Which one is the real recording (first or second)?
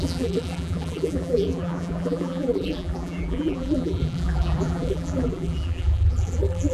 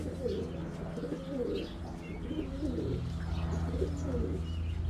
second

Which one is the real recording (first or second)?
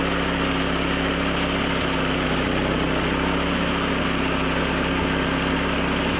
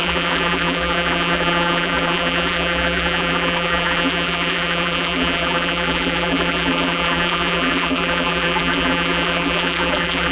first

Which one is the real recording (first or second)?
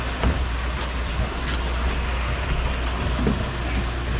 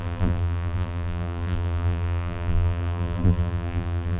first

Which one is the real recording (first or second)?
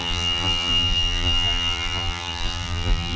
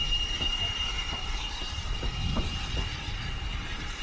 second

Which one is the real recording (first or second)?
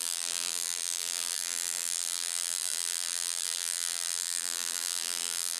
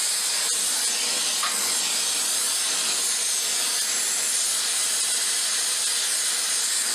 second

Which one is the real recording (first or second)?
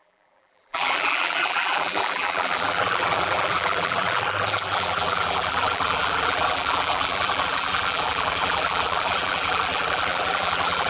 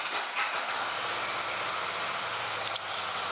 second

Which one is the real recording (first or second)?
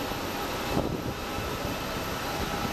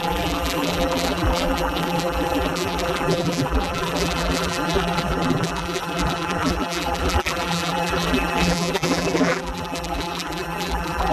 first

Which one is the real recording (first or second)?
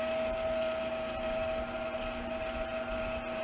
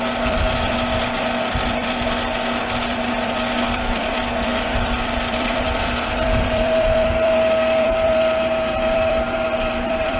first